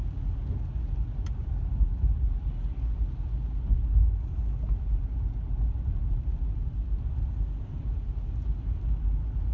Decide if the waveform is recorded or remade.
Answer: recorded